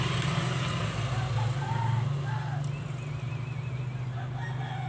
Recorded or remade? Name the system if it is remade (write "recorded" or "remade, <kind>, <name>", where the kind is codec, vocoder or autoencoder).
recorded